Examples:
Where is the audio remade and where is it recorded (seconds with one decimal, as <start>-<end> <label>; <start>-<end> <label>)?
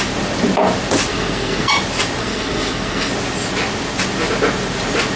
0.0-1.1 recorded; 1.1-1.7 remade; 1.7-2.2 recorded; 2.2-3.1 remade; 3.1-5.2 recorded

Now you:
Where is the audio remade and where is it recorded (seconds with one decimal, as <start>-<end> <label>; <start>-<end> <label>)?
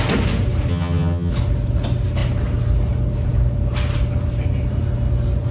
0.0-0.7 recorded; 0.7-1.3 remade; 1.3-5.5 recorded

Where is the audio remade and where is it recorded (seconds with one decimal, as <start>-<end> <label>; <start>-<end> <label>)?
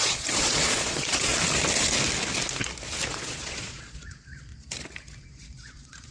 0.0-1.3 remade; 1.3-3.1 recorded; 3.1-4.5 remade; 4.5-5.2 recorded; 5.2-6.1 remade